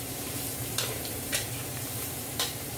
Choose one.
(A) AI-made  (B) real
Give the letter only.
A